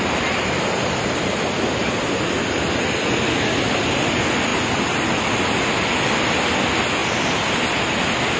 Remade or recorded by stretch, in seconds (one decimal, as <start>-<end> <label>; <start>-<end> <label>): 0.0-4.5 recorded; 4.5-5.4 remade; 5.4-7.0 recorded; 7.0-7.5 remade; 7.5-8.4 recorded